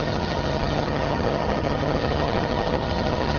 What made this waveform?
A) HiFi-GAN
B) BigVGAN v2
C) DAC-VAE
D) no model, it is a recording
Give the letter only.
A